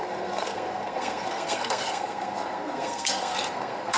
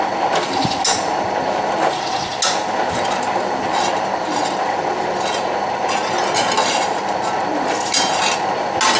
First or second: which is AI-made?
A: first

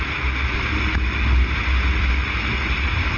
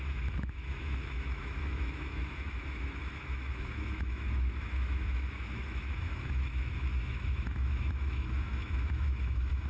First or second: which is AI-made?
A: second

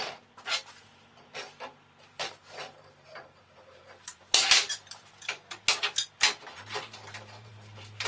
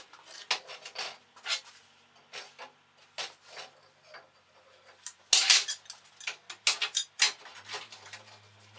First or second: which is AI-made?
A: first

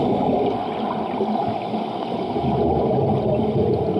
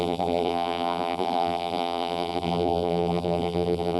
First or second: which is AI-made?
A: second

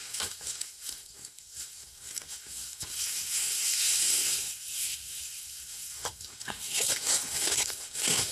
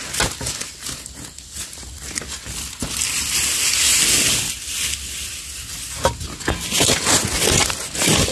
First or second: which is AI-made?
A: first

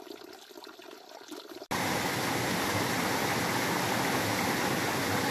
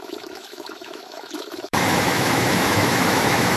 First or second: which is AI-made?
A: second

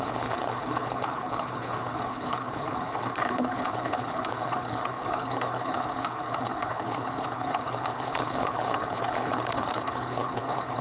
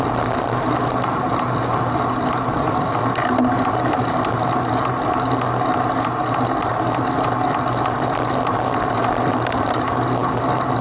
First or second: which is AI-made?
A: first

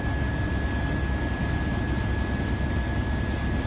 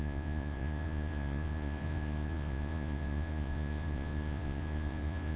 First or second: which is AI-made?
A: second